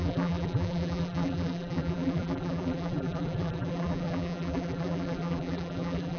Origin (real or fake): fake